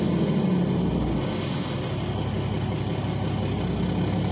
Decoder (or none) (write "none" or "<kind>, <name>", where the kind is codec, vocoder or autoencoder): none